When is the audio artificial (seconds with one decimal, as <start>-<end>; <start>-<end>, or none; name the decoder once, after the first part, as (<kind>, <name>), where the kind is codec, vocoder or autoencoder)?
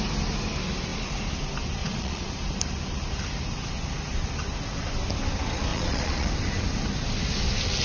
1.8-2.3 (vocoder, Vocos); 5.7-6.3